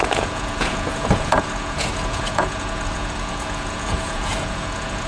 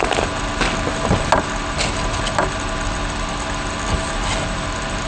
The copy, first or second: first